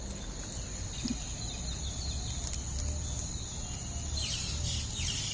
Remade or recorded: recorded